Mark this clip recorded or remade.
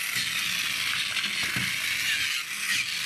recorded